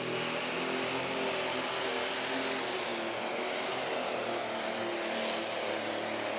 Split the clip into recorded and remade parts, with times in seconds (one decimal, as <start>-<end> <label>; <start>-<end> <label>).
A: 0.0-6.4 recorded